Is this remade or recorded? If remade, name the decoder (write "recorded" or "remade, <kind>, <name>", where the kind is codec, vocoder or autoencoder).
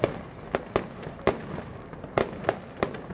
recorded